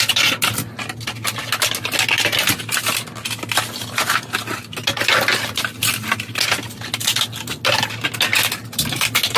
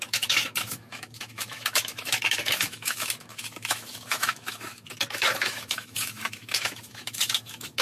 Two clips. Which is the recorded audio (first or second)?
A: first